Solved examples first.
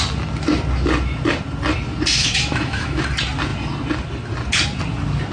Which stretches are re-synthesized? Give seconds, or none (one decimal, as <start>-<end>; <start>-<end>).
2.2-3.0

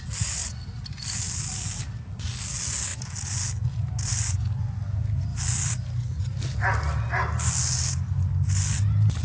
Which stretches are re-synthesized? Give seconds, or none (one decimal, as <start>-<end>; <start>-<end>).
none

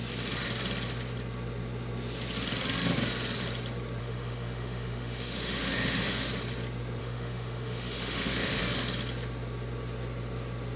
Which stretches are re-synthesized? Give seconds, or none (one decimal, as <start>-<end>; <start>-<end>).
4.0-6.3; 7.0-8.6

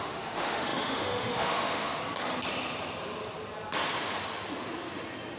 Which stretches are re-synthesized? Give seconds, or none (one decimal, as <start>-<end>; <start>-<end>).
0.0-2.0

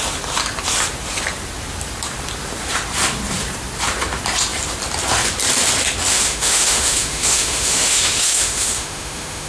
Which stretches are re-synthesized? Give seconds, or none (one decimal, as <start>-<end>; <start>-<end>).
6.1-9.5

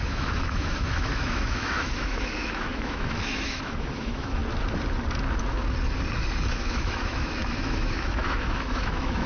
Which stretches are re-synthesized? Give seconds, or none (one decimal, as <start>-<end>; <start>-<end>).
0.0-4.4; 6.5-9.3

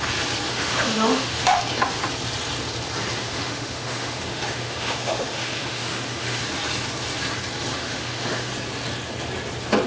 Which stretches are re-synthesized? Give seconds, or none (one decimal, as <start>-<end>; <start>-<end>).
0.5-1.6; 3.2-6.4; 7.7-8.5

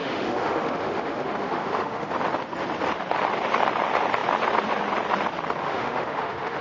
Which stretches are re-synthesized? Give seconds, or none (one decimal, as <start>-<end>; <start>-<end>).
0.0-2.1; 5.6-6.6